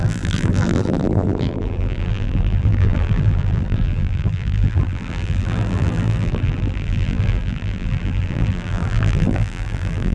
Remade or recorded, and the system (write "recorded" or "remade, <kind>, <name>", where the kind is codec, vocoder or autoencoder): remade, vocoder, BigVGAN v2